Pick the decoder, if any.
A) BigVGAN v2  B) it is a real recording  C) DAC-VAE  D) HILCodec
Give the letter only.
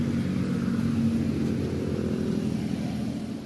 B